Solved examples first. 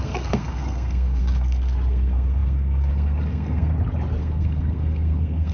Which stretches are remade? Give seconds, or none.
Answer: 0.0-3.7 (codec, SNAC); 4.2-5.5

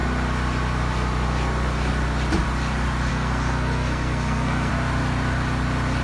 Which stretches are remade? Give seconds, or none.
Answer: 3.1-4.7 (codec, SNAC)

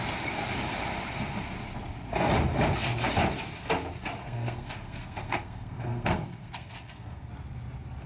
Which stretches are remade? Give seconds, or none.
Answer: 4.2-7.3 (codec, SNAC)

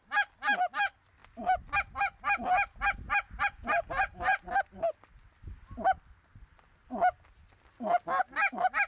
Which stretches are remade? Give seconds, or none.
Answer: none

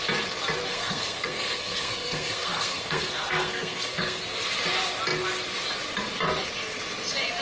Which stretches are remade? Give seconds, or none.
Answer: 0.7-4.2 (codec, SNAC)

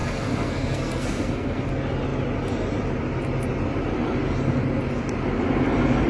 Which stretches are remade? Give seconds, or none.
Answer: 0.0-1.7 (codec, SNAC)

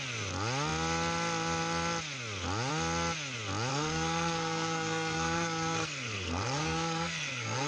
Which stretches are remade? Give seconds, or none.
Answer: 3.7-7.7 (codec, SNAC)